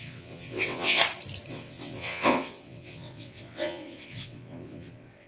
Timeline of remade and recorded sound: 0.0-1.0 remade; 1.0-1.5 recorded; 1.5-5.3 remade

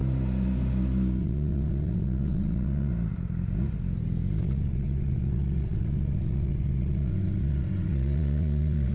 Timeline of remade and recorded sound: 0.0-1.2 recorded; 1.2-2.9 remade; 2.9-4.4 recorded; 4.4-8.9 remade

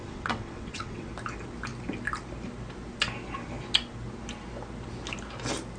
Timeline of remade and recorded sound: 0.0-1.1 remade; 1.1-5.8 recorded

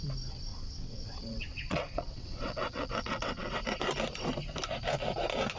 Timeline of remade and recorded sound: 0.0-0.5 recorded; 0.5-3.5 remade; 3.5-5.6 recorded